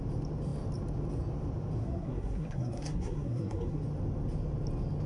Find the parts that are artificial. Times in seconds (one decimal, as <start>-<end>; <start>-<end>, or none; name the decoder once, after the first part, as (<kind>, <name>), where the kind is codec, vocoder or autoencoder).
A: 1.8-3.8 (codec, SNAC)